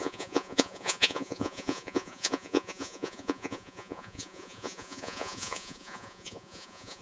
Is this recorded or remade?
remade